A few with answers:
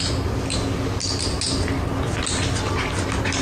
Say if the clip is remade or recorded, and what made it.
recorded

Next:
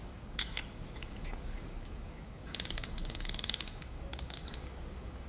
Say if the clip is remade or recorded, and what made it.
remade, codec, DAC